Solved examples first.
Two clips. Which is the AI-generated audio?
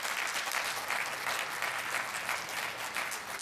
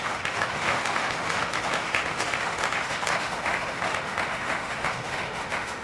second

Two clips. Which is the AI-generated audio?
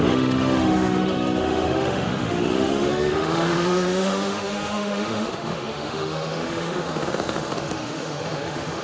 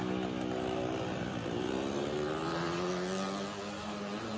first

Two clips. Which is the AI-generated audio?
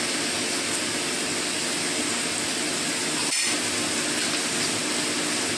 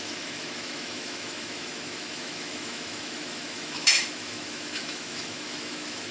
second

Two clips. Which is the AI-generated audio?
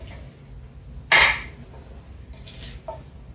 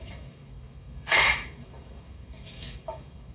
second